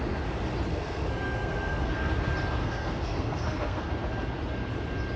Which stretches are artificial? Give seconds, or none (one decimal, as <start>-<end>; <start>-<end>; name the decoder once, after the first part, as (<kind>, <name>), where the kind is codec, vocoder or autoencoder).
0.7-2.1 (codec, SNAC); 2.6-3.9